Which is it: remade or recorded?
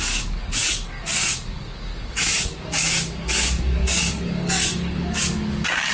remade